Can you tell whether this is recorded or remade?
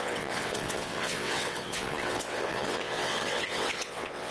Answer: remade